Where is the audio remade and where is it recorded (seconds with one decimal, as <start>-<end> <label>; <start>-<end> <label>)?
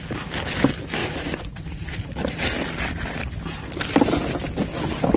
0.0-1.0 recorded; 1.0-2.1 remade; 2.1-5.2 recorded